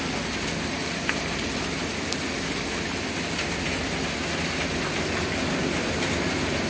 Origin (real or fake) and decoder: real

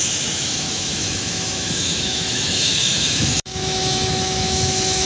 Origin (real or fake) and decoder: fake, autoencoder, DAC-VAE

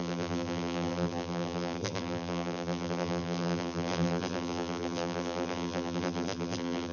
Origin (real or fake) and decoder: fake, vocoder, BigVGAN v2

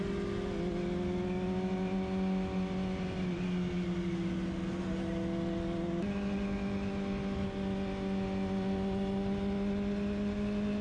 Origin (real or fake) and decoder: real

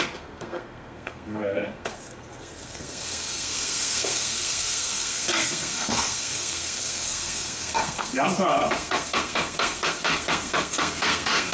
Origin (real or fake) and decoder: fake, codec, SNAC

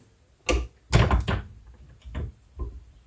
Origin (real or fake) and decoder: real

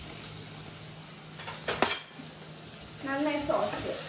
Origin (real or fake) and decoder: real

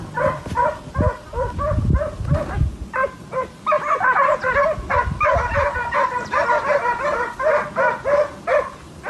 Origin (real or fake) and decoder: real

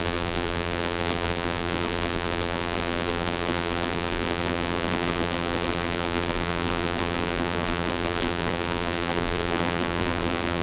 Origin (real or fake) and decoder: fake, vocoder, BigVGAN v2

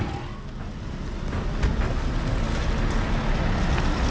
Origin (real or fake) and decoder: real